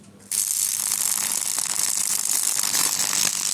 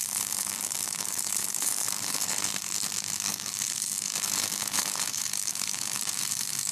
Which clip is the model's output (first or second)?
second